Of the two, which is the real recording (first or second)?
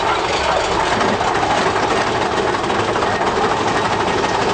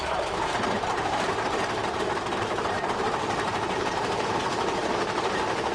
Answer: first